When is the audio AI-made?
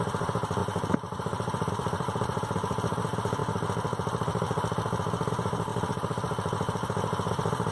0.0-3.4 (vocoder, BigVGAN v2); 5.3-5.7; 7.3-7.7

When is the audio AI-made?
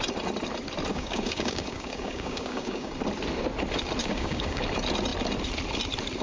0.9-2.9 (codec, DAC); 4.0-4.6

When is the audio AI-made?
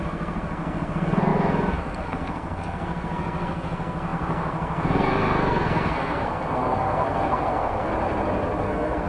0.0-7.9 (codec, SNAC); 8.6-9.1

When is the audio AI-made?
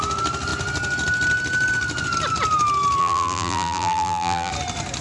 3.0-4.5 (vocoder, BigVGAN v2)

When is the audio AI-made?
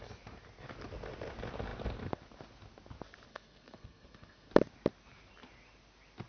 3.3-4.5 (codec, SNAC)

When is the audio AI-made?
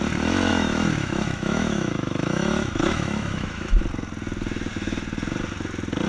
0.5-3.8 (autoencoder, DAC-VAE)